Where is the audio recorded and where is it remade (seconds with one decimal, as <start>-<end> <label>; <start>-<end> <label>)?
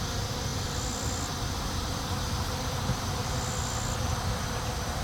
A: 0.0-5.0 recorded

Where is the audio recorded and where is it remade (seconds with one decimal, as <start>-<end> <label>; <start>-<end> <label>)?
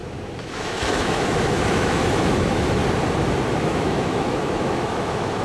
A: 0.0-2.8 remade; 2.8-3.5 recorded; 3.5-5.4 remade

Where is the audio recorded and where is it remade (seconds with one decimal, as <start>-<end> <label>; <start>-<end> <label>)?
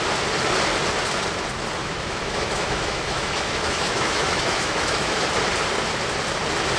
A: 0.0-1.8 recorded; 1.8-5.2 remade; 5.2-6.8 recorded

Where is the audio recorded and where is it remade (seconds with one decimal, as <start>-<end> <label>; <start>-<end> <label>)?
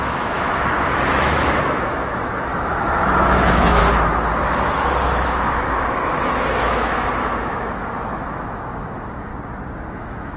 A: 0.0-3.8 remade; 3.8-4.4 recorded; 4.4-9.3 remade; 9.3-9.9 recorded; 9.9-10.4 remade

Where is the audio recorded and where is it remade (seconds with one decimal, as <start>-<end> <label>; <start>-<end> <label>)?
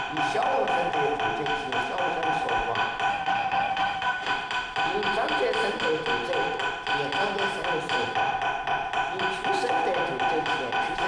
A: 0.0-3.1 recorded; 3.1-4.3 remade; 4.3-11.1 recorded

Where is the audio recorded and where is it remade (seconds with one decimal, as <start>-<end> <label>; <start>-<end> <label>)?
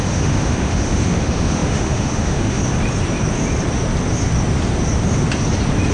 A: 0.0-2.6 remade; 2.6-5.9 recorded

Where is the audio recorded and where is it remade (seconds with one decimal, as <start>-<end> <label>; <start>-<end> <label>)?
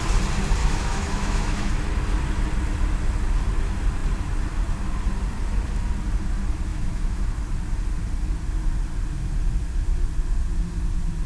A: 0.0-0.6 recorded; 0.6-1.7 remade; 1.7-6.7 recorded; 6.7-7.4 remade; 7.4-11.3 recorded